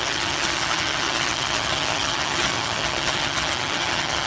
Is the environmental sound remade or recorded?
remade